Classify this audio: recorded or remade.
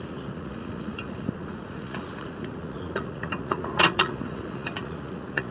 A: remade